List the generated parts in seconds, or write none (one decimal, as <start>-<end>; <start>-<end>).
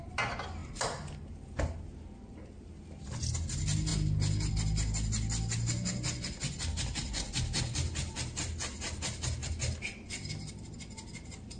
none